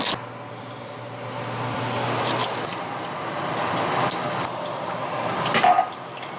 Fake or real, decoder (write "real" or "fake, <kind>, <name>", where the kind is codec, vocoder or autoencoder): real